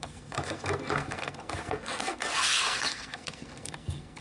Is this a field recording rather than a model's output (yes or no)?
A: no